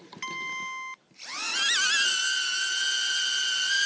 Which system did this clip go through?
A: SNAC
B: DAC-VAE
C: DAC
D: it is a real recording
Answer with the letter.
D